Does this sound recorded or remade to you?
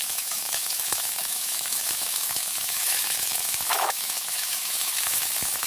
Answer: remade